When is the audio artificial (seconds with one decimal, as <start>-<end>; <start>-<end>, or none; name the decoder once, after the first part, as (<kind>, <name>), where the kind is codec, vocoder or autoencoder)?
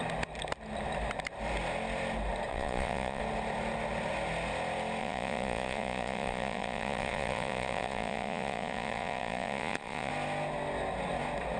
2.5-3.2 (vocoder, Vocos); 5.0-10.1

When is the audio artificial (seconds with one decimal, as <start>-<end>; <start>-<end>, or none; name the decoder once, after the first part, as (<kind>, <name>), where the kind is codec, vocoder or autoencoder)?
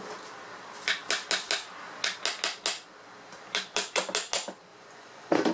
4.7-5.5 (vocoder, Vocos)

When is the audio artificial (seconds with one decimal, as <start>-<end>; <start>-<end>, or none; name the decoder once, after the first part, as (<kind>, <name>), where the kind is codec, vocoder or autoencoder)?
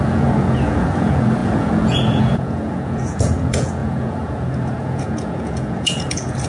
0.0-6.5 (vocoder, Vocos)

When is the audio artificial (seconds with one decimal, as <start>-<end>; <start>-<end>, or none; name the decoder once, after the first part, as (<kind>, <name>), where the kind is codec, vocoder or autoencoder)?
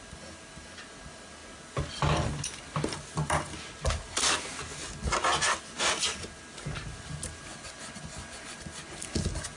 7.5-8.6 (vocoder, Vocos)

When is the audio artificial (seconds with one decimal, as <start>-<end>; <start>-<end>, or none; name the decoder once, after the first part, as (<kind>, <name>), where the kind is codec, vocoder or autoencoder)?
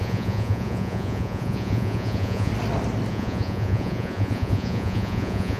0.0-2.5 (vocoder, Vocos); 3.1-5.6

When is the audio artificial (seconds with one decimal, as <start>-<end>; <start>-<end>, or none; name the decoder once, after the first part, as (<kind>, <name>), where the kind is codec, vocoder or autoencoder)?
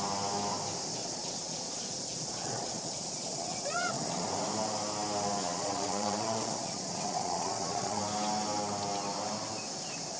1.0-4.3 (vocoder, Vocos); 5.4-8.0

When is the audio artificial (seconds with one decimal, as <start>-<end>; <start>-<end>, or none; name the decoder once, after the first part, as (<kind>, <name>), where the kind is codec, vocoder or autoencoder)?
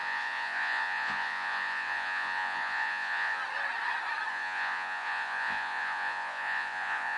0.0-3.4 (vocoder, Vocos); 4.3-7.2